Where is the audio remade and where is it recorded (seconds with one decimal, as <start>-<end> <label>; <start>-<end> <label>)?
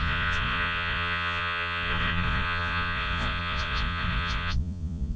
0.0-5.2 remade